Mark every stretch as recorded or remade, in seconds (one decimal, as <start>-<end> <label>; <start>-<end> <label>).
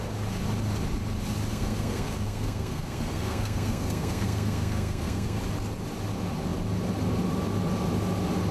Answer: 0.0-1.5 recorded; 1.5-5.4 remade; 5.4-8.5 recorded